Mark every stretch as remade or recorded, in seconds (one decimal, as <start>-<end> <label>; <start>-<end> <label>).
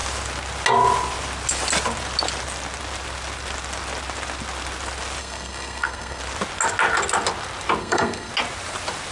0.0-5.2 recorded; 5.2-6.2 remade; 6.2-7.8 recorded; 7.8-8.3 remade; 8.3-9.1 recorded